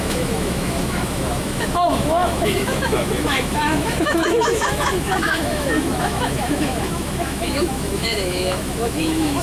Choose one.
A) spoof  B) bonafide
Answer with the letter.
A